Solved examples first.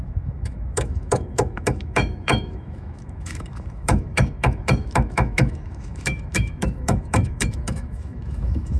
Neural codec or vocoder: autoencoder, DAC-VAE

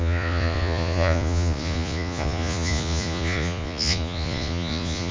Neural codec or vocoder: vocoder, Vocos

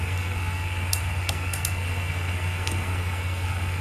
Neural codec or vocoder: codec, SNAC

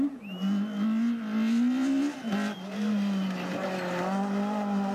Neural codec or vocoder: none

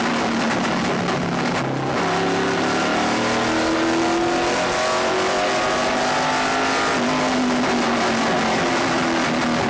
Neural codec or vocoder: none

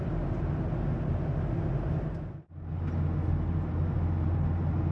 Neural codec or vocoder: none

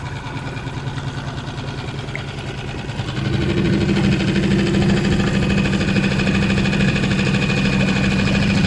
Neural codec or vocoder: none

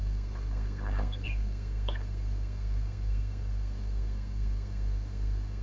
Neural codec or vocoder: codec, SNAC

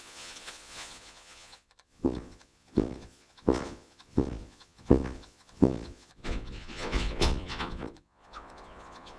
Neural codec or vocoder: vocoder, Vocos